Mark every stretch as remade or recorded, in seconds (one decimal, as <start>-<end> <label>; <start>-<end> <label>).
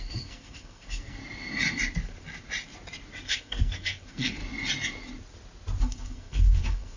0.0-1.2 remade; 1.2-3.3 recorded; 3.3-4.4 remade; 4.4-5.8 recorded; 5.8-7.0 remade